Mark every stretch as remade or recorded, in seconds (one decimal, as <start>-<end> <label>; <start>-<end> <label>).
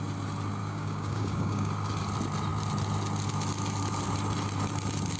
0.0-0.6 recorded; 0.6-1.7 remade; 1.7-5.2 recorded